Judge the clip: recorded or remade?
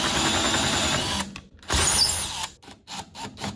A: recorded